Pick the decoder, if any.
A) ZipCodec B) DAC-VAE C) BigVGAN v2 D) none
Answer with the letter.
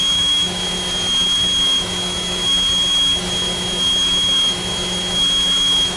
B